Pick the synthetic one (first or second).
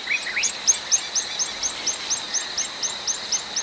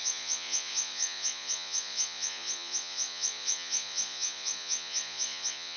second